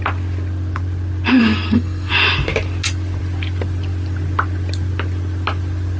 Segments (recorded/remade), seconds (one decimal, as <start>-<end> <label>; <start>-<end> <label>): 0.0-1.4 recorded; 1.4-2.1 remade; 2.1-6.0 recorded